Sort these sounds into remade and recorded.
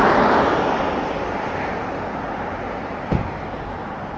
remade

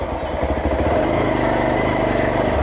recorded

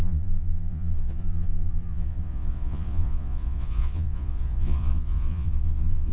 remade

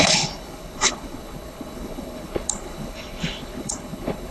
remade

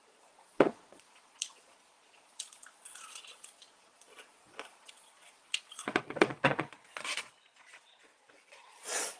remade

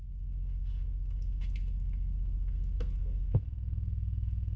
remade